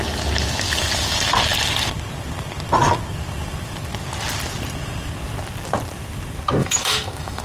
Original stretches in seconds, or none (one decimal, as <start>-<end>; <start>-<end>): 0.0-6.6